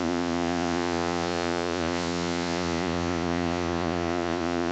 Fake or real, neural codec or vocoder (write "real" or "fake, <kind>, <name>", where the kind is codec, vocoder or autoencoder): fake, vocoder, Vocos